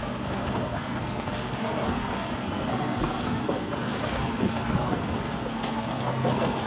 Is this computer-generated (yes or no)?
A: yes